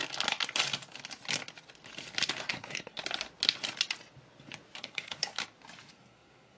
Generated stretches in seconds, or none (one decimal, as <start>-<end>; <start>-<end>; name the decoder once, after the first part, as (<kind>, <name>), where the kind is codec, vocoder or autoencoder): 2.5-3.0 (codec, SNAC); 4.8-5.3; 5.9-6.6